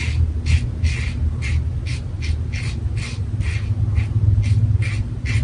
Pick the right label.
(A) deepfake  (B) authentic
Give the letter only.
B